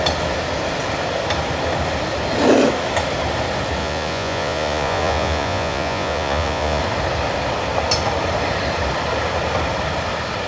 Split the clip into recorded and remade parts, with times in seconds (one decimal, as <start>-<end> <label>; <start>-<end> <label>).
0.0-3.8 recorded; 3.8-6.8 remade; 6.8-10.5 recorded

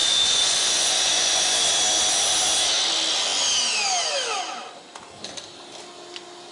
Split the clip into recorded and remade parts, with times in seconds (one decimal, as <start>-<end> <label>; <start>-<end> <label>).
0.0-1.7 remade; 1.7-6.5 recorded

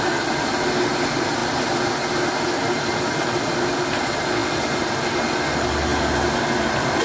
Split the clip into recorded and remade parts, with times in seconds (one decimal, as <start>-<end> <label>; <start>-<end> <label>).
0.0-7.0 recorded